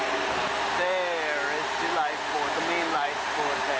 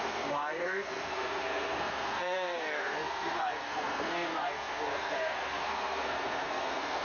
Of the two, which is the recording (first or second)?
first